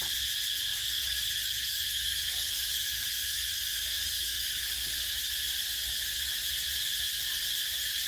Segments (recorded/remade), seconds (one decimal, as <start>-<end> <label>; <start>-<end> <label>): 0.0-0.7 recorded; 0.7-4.9 remade; 4.9-8.1 recorded